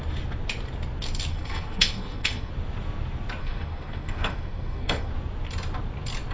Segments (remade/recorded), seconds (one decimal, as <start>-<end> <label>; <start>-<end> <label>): 0.0-1.3 recorded; 1.3-2.5 remade; 2.5-3.4 recorded; 3.4-5.1 remade; 5.1-6.3 recorded